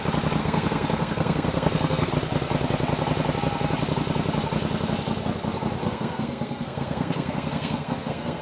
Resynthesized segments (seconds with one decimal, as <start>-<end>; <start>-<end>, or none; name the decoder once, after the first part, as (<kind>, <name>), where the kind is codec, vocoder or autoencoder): 0.4-2.1 (codec, SNAC); 5.8-8.4